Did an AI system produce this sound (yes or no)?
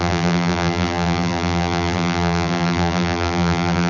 yes